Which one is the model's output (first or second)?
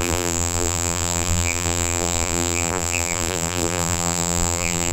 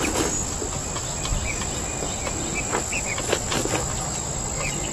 first